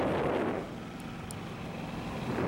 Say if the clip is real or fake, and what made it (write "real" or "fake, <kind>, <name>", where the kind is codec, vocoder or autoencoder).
real